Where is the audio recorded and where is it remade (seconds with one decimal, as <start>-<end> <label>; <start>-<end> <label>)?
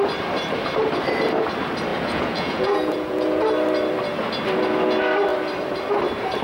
0.0-1.9 recorded; 1.9-3.4 remade; 3.4-6.4 recorded